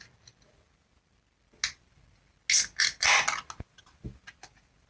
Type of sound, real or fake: real